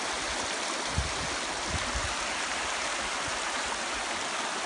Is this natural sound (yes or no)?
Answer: yes